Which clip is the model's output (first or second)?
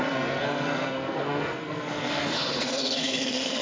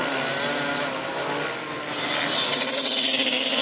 first